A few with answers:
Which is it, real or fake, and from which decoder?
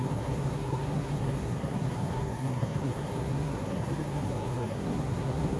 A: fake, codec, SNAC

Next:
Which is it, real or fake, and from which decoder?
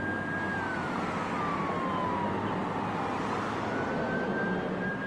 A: real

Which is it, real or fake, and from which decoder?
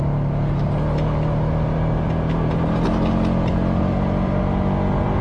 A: real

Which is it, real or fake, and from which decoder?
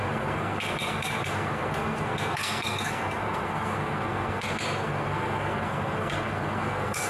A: fake, codec, SNAC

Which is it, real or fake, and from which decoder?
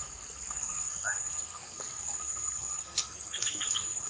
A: fake, codec, SNAC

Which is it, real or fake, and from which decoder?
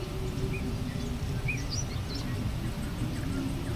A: real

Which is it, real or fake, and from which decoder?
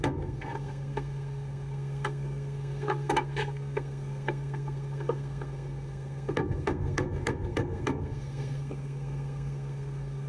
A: fake, codec, SNAC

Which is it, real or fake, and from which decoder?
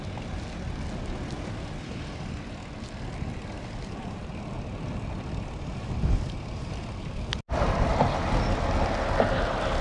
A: real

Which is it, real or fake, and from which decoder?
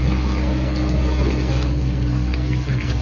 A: fake, codec, SNAC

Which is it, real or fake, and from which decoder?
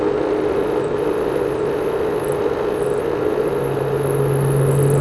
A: real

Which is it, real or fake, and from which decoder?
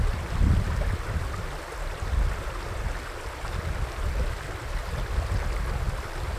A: real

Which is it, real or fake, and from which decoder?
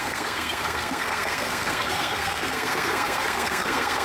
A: fake, codec, SNAC